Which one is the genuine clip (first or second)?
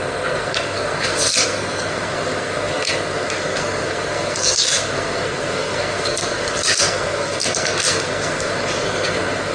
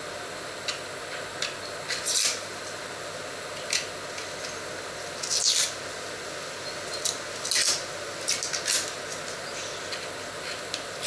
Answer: second